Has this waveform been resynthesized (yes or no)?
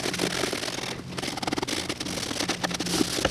no